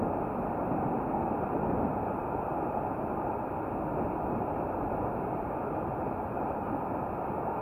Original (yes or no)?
yes